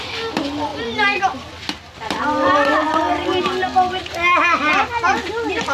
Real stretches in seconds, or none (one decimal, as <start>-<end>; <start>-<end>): 0.0-0.7; 3.4-5.7